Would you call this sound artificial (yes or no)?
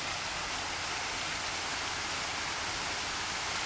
no